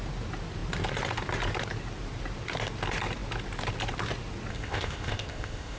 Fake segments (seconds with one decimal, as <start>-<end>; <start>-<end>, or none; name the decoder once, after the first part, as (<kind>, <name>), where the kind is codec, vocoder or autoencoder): 4.5-5.8 (codec, ZipCodec)